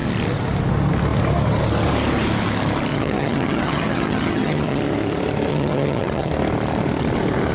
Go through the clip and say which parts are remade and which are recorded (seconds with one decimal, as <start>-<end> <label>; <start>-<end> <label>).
0.0-2.9 recorded; 2.9-4.8 remade; 4.8-5.5 recorded; 5.5-6.3 remade; 6.3-7.5 recorded